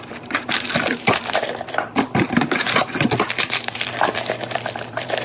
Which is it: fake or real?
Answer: fake